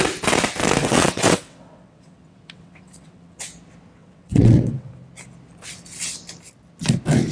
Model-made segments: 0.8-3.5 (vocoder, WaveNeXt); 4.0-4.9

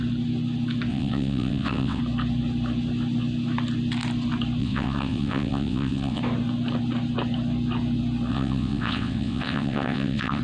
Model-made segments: 0.9-2.0 (vocoder, WaveNeXt); 4.6-6.2; 8.3-10.4

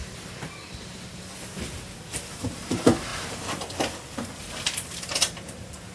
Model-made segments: none

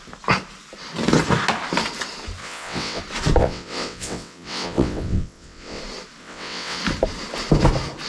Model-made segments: 2.4-3.0 (vocoder, WaveNeXt); 3.4-5.8; 6.2-6.8

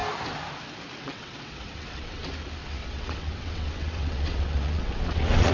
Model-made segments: 1.0-2.2 (vocoder, WaveNeXt); 2.6-5.5

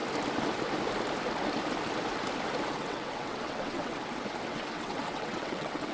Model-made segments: 2.7-3.9 (vocoder, WaveNeXt); 4.5-5.9

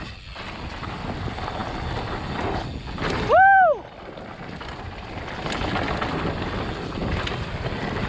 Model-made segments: none

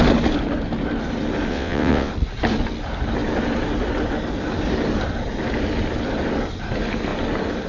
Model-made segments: 1.5-2.1 (vocoder, WaveNeXt)